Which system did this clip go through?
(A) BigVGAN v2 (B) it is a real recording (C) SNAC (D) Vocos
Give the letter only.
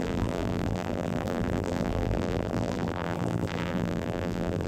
A